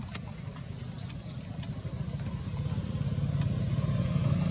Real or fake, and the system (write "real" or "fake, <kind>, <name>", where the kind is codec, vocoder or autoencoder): real